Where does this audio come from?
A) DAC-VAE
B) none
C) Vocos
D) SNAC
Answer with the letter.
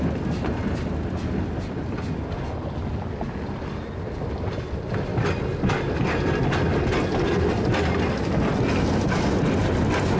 B